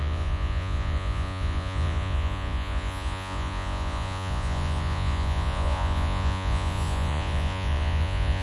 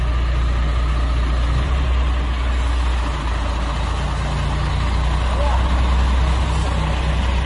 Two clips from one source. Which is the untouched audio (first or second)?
second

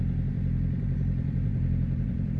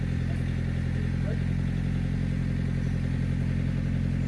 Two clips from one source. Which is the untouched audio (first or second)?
second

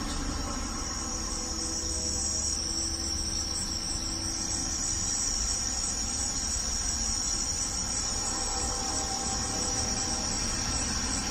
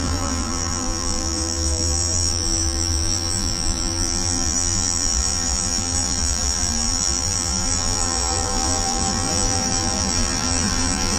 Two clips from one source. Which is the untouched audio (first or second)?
first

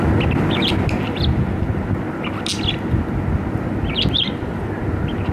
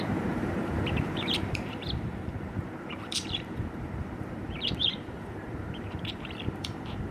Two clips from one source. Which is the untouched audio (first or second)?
first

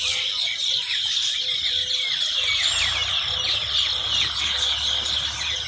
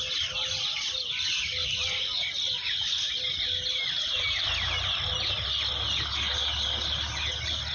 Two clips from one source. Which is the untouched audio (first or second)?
second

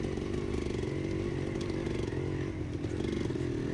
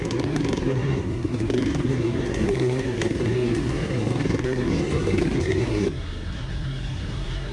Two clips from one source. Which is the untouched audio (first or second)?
first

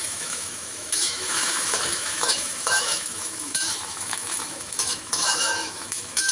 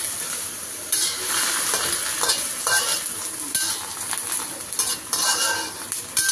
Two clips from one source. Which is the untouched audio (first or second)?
second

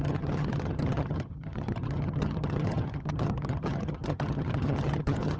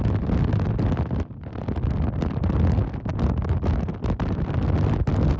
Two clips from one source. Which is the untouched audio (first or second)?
second